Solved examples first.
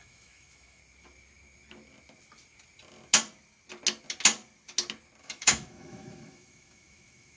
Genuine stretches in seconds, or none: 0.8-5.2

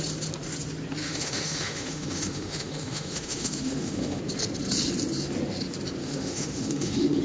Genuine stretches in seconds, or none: 0.0-1.0; 4.2-6.0

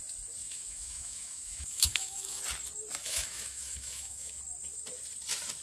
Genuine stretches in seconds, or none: 0.0-0.4; 2.4-3.0; 4.4-5.6

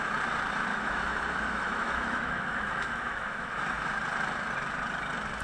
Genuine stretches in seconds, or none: 0.0-0.7; 3.9-5.4

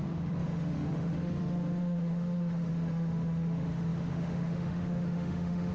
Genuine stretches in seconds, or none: none

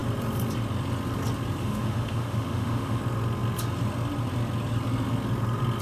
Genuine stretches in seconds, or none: 0.0-1.6; 3.0-5.8